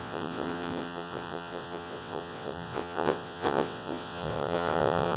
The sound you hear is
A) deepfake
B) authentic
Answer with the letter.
A